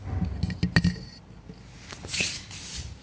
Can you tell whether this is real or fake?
real